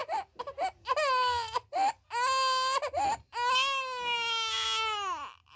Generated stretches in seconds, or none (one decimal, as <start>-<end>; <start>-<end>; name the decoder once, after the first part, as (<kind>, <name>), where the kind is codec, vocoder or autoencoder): none